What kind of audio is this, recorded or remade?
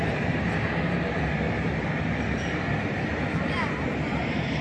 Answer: remade